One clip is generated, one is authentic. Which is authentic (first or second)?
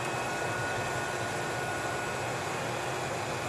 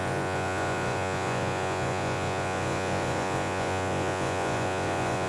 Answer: first